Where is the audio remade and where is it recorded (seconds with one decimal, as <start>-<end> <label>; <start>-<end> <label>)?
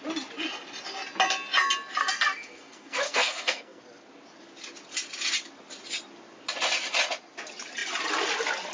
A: 0.0-2.0 recorded; 2.0-3.8 remade; 3.8-8.7 recorded